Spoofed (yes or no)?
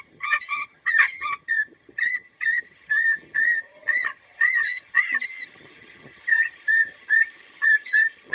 yes